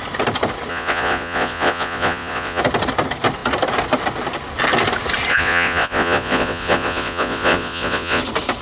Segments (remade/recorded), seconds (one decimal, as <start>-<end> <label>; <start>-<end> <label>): 0.0-0.7 recorded; 0.7-2.6 remade; 2.6-5.3 recorded; 5.3-8.2 remade; 8.2-8.6 recorded